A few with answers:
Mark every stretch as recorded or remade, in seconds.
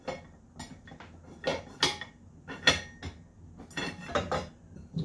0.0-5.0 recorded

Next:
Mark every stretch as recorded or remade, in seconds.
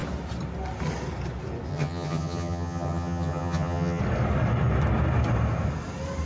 0.0-1.7 recorded; 1.7-4.0 remade; 4.0-6.3 recorded